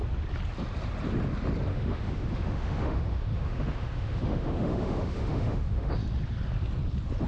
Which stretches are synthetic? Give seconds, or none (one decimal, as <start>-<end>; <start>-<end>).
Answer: 1.7-5.9